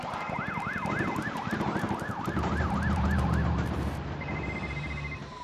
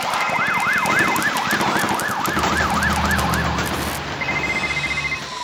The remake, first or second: first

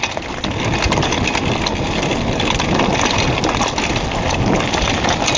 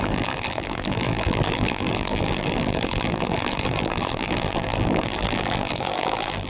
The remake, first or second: second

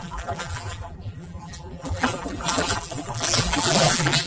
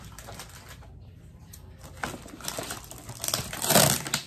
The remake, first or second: first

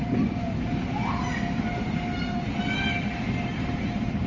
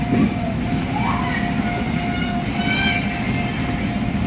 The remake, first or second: first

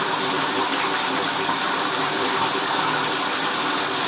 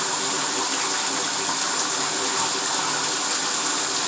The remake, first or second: first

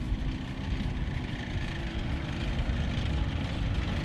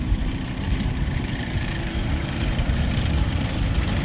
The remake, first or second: second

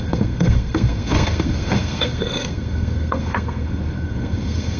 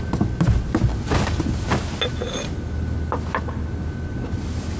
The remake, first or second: first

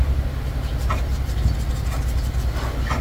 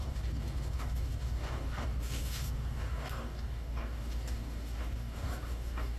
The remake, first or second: second